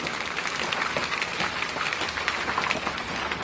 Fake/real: real